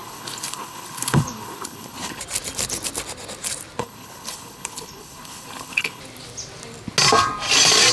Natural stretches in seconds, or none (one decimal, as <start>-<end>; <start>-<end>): 2.2-3.8; 6.0-7.9